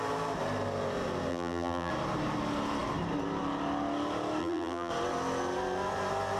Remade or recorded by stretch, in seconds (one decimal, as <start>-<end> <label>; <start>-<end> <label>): 0.0-1.3 recorded; 1.3-1.9 remade; 1.9-4.4 recorded; 4.4-4.9 remade; 4.9-6.4 recorded